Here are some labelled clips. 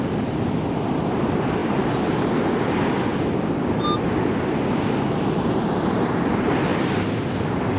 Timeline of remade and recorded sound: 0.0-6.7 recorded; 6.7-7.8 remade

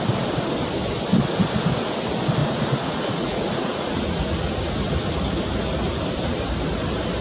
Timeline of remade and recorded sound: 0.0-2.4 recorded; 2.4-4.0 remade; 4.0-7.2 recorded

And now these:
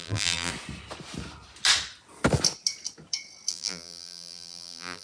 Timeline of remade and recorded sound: 0.0-0.5 remade; 0.5-3.5 recorded; 3.5-5.0 remade

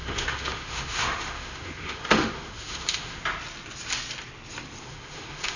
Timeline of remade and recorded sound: 0.0-3.2 remade; 3.2-4.8 recorded; 4.8-5.6 remade